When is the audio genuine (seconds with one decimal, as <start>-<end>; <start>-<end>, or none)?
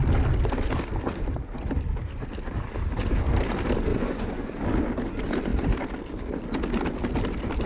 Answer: 0.0-3.9; 4.5-7.7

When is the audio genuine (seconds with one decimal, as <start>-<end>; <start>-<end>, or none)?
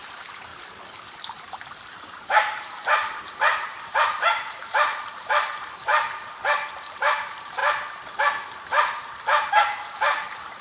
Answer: 0.5-2.1; 5.9-6.8; 7.6-9.5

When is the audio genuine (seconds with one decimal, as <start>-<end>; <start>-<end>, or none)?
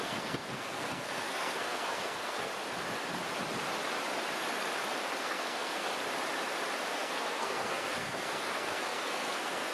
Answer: 2.5-5.2; 5.9-6.9